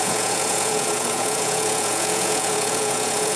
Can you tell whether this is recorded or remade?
remade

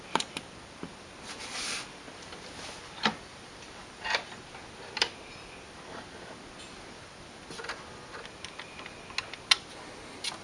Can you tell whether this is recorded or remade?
recorded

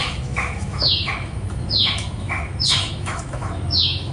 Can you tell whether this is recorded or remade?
remade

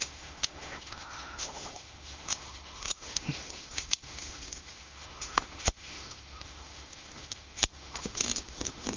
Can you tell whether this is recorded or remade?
remade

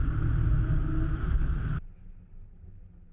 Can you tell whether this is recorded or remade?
recorded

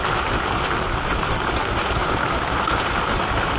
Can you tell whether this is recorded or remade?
recorded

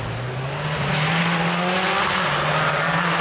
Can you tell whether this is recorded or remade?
recorded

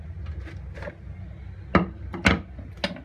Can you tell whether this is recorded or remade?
recorded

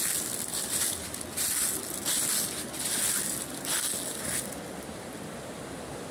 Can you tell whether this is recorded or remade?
recorded